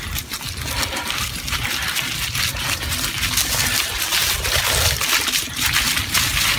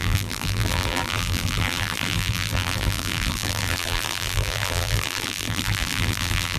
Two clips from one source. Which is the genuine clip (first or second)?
first